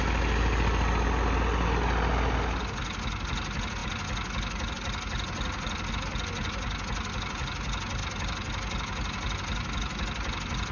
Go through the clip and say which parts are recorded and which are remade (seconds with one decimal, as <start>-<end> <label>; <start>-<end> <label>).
0.0-10.7 recorded